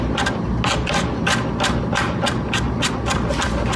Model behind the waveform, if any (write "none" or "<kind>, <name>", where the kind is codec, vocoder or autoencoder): none